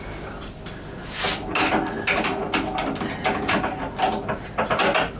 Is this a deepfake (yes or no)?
no